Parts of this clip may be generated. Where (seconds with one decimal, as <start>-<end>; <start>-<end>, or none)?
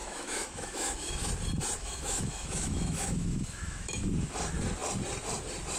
0.0-1.3; 1.8-4.0